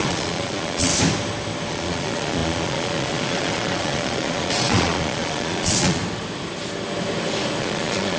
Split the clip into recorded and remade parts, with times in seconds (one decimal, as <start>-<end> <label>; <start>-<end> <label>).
0.0-0.9 remade; 0.9-1.7 recorded; 1.7-6.0 remade; 6.0-7.6 recorded; 7.6-8.2 remade